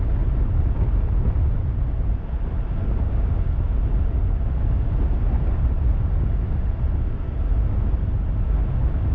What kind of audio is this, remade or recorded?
recorded